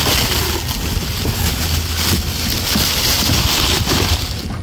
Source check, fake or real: real